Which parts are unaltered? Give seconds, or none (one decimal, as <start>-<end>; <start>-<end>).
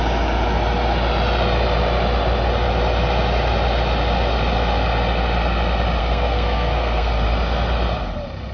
0.0-6.0; 7.1-8.5